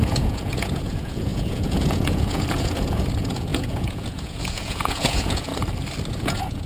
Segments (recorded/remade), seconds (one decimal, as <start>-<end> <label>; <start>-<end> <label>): 0.0-5.5 remade; 5.5-6.1 recorded; 6.1-6.7 remade

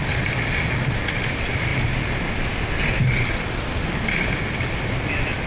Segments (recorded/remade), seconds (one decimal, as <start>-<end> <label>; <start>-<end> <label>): 0.0-5.5 recorded

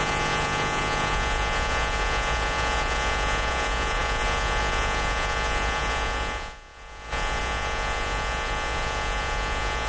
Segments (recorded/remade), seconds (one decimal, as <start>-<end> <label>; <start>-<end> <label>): 0.0-9.9 remade

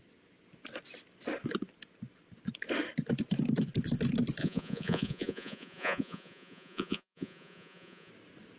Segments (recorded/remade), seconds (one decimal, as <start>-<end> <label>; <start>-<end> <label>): 0.0-4.4 recorded; 4.4-8.1 remade; 8.1-8.6 recorded

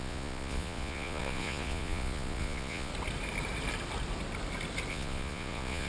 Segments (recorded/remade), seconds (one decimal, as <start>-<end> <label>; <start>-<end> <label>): 0.0-2.9 remade; 2.9-4.9 recorded; 4.9-5.9 remade

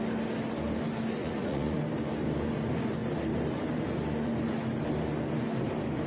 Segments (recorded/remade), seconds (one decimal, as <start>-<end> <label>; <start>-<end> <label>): 0.0-1.2 recorded; 1.2-1.8 remade; 1.8-6.1 recorded